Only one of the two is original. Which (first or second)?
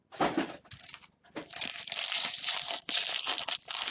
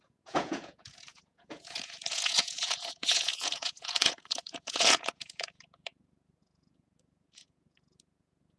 first